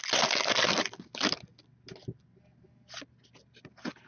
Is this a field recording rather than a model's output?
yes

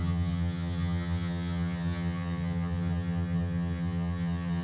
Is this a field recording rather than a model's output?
no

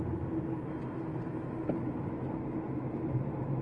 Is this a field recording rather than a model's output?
yes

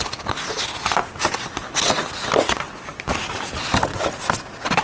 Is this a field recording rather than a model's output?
yes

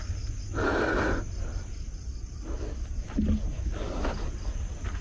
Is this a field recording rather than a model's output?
yes